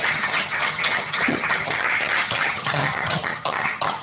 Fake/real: fake